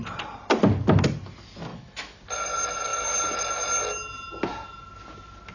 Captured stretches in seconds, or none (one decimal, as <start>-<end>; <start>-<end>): 0.0-1.7; 2.2-5.5